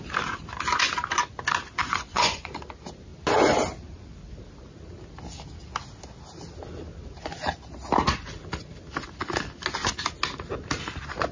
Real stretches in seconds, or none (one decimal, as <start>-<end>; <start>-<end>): 0.0-1.8; 2.6-11.3